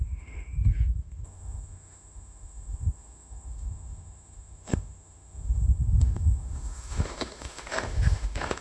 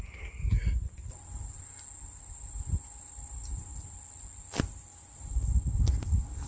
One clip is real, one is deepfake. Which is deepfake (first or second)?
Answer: first